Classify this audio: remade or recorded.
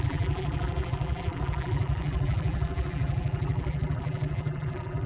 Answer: remade